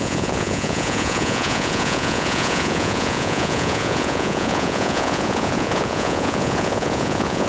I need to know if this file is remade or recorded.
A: remade